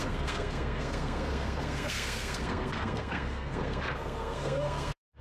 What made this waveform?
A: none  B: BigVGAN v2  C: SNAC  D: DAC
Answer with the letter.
C